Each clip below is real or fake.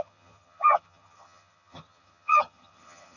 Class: fake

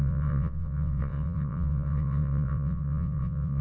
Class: fake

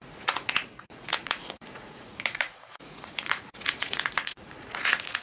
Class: fake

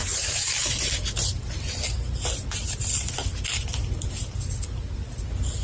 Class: real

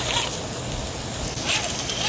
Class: real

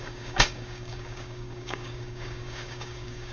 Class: fake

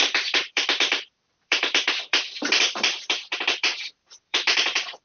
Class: fake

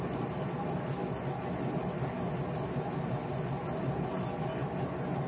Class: real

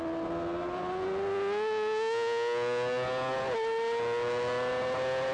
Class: real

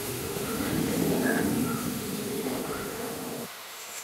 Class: fake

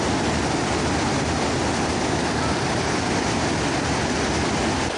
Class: real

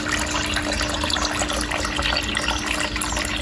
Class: real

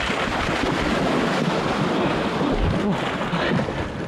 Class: real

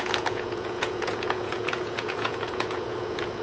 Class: fake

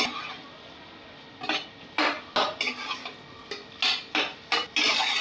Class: real